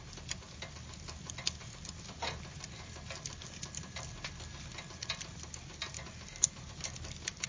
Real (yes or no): yes